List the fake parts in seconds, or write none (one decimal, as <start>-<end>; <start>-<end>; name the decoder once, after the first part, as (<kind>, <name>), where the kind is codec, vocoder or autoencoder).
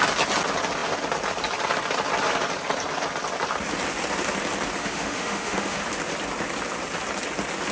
4.8-5.8 (autoencoder, DAC-VAE)